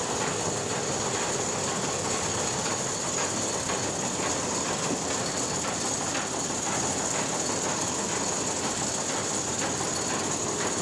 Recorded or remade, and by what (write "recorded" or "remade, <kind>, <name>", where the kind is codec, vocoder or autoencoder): recorded